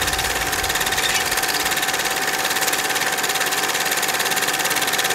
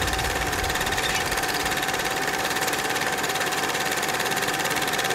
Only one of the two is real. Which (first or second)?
first